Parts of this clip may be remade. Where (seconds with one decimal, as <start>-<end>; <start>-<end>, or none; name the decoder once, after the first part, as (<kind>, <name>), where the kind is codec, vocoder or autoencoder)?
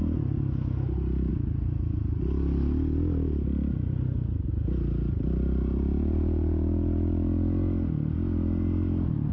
1.3-2.2 (vocoder, BigVGAN v2)